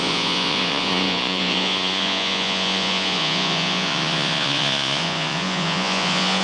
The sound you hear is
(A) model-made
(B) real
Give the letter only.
A